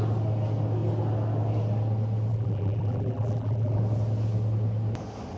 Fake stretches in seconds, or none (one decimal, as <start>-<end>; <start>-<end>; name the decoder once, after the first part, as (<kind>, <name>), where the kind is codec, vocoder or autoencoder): 2.3-3.8 (vocoder, BigVGAN v2)